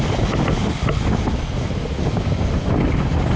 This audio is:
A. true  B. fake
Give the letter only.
A